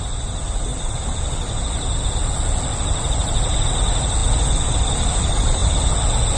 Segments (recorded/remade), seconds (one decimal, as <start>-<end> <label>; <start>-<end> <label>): 0.0-6.4 recorded